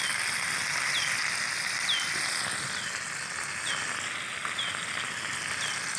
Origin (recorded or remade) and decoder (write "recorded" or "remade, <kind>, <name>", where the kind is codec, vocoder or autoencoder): recorded